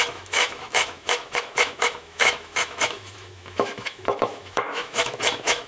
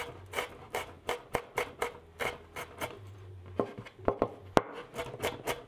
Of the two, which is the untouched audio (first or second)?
second